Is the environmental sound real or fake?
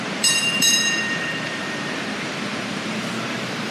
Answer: fake